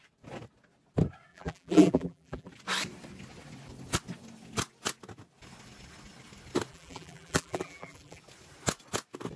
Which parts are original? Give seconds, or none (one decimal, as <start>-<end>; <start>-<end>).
0.0-1.3; 2.5-6.7; 8.2-9.4